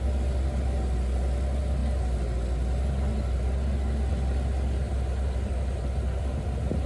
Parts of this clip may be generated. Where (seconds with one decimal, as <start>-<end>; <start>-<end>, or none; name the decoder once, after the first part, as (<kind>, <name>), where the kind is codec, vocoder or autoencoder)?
none